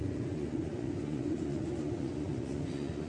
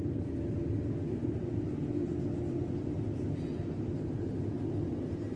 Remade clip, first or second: first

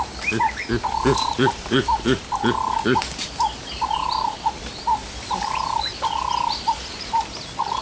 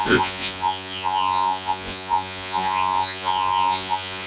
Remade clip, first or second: second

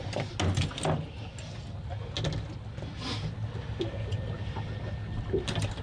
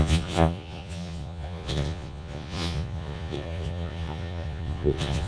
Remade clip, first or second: second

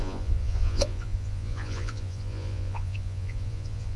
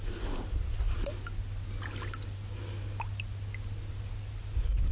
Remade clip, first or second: first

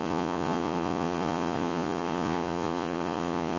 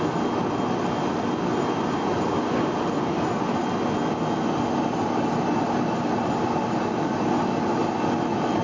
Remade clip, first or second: first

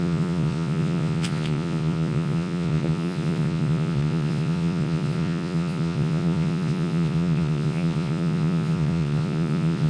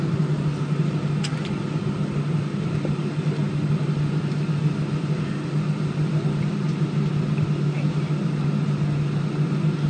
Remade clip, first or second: first